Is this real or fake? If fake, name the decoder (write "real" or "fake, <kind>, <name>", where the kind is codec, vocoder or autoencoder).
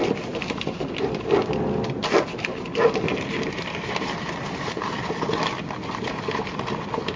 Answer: real